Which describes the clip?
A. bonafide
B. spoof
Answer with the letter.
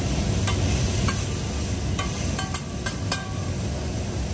A